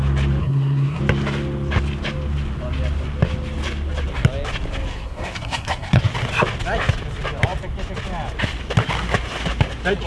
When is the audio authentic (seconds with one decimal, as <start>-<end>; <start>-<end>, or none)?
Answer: 0.0-0.4; 1.0-4.9; 6.0-10.1